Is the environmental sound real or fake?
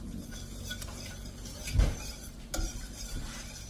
fake